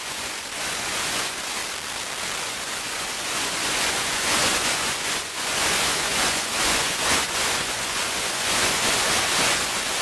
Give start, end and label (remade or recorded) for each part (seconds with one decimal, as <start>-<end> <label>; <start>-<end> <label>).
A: 0.0-1.6 remade; 1.6-2.4 recorded; 2.4-10.0 remade